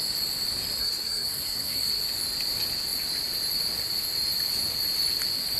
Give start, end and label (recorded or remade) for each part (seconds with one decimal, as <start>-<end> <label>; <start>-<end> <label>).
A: 0.0-0.8 recorded; 0.8-2.0 remade; 2.0-5.6 recorded

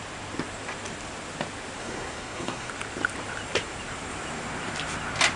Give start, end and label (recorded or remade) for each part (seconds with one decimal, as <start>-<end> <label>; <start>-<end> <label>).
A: 0.0-1.8 recorded; 1.8-2.7 remade; 2.7-5.4 recorded

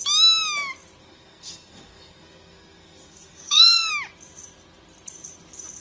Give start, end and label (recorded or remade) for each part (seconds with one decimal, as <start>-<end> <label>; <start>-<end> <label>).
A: 0.0-1.0 recorded; 1.0-3.9 remade; 3.9-5.8 recorded